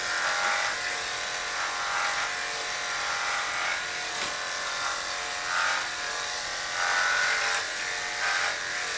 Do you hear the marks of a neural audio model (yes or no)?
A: no